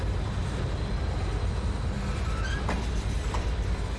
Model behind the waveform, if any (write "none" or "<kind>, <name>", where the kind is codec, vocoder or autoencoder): none